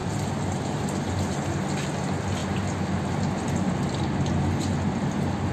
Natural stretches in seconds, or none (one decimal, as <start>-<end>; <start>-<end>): 0.8-5.5